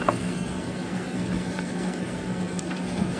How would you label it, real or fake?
fake